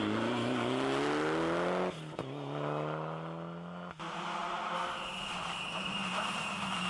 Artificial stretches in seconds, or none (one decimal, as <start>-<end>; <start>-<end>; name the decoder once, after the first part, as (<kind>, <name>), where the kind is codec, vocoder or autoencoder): none